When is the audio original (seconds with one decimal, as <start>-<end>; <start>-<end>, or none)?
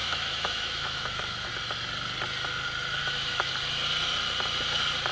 1.5-3.0; 3.5-5.1